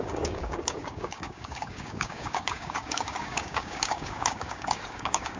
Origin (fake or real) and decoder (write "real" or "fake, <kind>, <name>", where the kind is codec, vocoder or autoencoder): fake, codec, DAC